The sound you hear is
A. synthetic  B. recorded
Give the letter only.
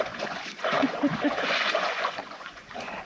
A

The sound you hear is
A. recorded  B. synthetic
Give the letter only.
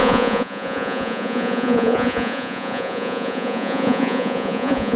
B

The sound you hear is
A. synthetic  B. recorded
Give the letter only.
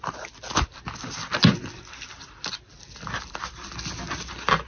B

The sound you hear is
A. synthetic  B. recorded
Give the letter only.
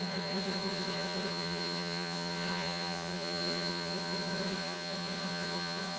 A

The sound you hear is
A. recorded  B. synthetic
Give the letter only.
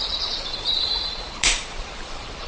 B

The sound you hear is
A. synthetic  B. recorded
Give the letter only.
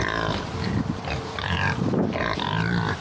B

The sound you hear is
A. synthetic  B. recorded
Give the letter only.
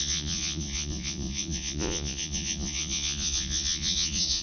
A